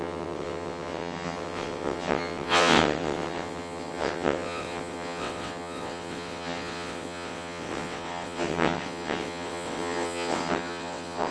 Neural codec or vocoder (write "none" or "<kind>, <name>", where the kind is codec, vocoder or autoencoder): vocoder, WaveNeXt